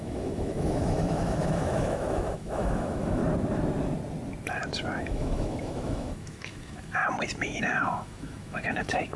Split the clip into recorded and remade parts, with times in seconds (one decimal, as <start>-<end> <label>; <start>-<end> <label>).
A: 0.0-3.2 remade; 3.2-5.0 recorded; 5.0-7.0 remade; 7.0-7.6 recorded; 7.6-9.2 remade

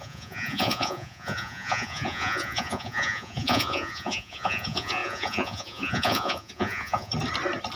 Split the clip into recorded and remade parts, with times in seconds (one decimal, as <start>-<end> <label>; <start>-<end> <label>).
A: 0.0-7.1 remade; 7.1-7.8 recorded

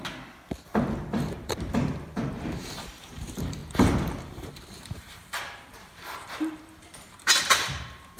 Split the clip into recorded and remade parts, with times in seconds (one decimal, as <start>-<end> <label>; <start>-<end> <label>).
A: 0.0-1.0 recorded; 1.0-8.2 remade

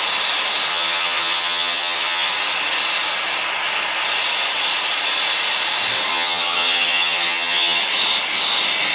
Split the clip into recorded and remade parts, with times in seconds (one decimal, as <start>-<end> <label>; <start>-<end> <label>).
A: 0.0-0.7 recorded; 0.7-2.3 remade; 2.3-6.1 recorded; 6.1-7.8 remade; 7.8-8.9 recorded

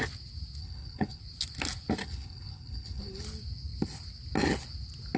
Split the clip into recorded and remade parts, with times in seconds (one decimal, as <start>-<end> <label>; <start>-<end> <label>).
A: 0.0-0.6 recorded; 0.6-1.2 remade; 1.2-2.0 recorded; 2.0-3.2 remade; 3.2-5.2 recorded

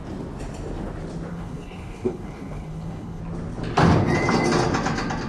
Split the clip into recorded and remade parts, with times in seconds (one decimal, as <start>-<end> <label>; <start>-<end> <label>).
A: 0.0-1.3 recorded; 1.3-3.2 remade; 3.2-5.3 recorded

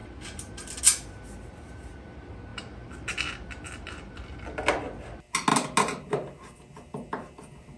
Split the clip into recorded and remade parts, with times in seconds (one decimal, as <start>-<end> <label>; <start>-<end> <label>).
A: 0.0-7.8 recorded